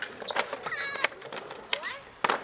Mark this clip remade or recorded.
recorded